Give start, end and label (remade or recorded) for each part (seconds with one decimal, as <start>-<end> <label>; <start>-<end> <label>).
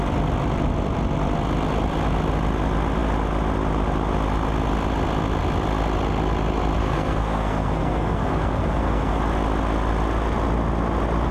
0.0-6.8 recorded; 6.8-9.2 remade; 9.2-11.3 recorded